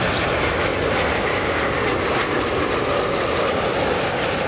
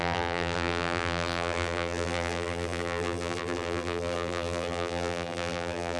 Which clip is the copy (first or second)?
second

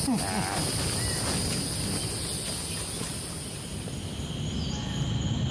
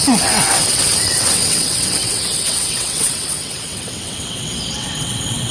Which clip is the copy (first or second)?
second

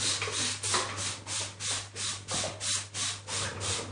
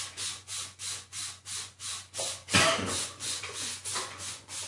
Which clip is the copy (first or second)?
second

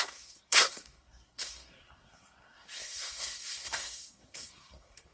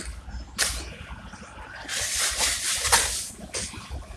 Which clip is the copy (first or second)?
first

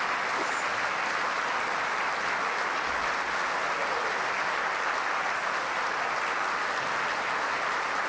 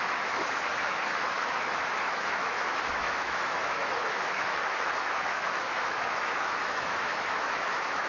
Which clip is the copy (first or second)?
second